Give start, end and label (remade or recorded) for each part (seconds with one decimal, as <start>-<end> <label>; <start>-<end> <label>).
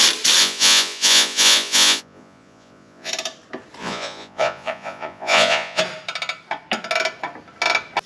0.0-0.4 recorded; 0.4-3.1 remade; 3.1-3.8 recorded; 3.8-5.8 remade; 5.8-8.1 recorded